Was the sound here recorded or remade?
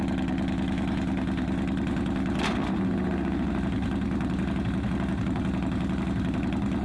recorded